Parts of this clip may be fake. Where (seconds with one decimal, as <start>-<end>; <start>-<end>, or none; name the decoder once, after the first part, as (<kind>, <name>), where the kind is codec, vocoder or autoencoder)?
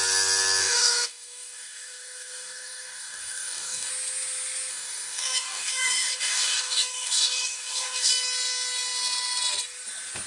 0.6-3.9 (codec, DAC); 4.7-8.1